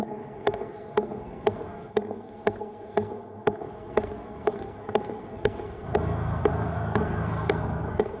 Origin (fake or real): fake